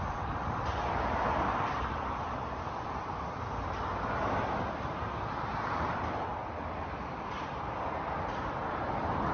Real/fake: fake